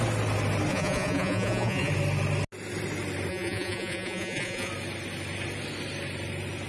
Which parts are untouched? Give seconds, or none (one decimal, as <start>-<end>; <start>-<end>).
0.0-0.7; 1.9-3.3; 4.7-6.7